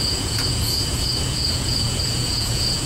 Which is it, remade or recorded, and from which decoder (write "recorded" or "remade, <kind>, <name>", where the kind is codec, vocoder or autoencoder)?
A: remade, vocoder, Vocos